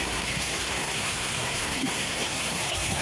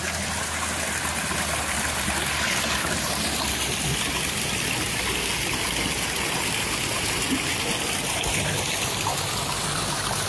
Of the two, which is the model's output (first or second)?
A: first